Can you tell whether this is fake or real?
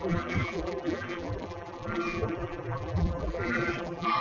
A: fake